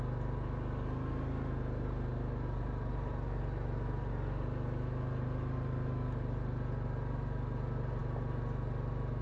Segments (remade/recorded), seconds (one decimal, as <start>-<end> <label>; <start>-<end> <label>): 0.0-9.2 recorded